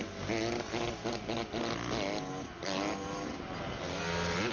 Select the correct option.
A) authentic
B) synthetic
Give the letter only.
A